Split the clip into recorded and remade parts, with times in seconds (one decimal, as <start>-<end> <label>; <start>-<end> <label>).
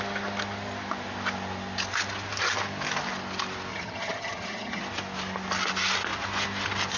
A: 0.0-3.7 recorded; 3.7-4.8 remade; 4.8-7.0 recorded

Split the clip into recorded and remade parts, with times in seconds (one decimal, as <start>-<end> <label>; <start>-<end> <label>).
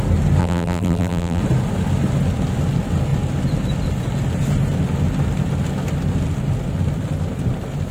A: 0.0-0.4 recorded; 0.4-1.4 remade; 1.4-7.9 recorded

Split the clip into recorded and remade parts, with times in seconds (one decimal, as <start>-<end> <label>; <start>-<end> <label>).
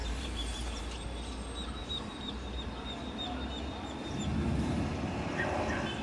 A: 0.0-0.8 remade; 0.8-1.8 recorded; 1.8-2.7 remade; 2.7-6.0 recorded